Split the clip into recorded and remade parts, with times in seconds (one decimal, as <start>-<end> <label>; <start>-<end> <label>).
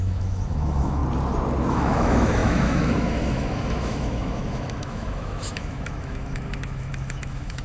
0.0-1.0 remade; 1.0-1.7 recorded; 1.7-7.6 remade